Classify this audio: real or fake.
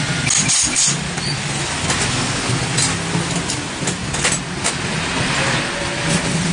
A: real